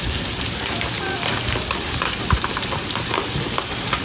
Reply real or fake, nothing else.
fake